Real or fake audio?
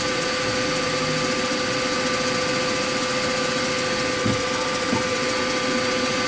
real